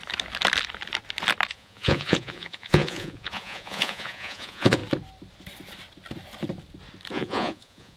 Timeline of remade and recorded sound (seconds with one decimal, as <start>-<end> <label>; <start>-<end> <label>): 0.0-1.5 recorded; 1.5-4.8 remade; 4.8-7.1 recorded; 7.1-8.0 remade